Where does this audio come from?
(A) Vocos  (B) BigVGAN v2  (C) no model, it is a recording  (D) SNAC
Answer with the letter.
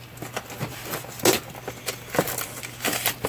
C